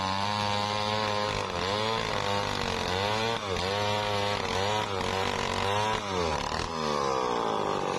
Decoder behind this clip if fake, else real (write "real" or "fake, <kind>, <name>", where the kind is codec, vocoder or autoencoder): real